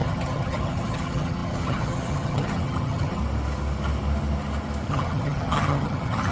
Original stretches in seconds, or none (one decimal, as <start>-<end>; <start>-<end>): 3.2-4.9